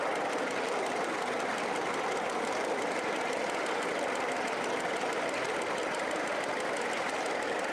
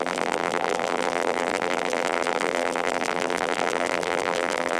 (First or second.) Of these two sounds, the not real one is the second